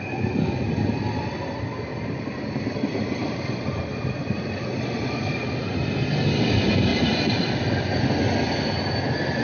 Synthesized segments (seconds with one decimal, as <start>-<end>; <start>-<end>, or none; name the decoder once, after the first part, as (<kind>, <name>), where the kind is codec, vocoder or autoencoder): 1.9-5.1 (vocoder, BigVGAN v2); 6.9-7.5